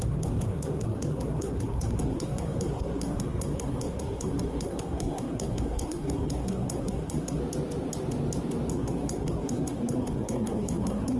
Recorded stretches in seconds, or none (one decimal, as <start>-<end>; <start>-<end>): 7.4-8.7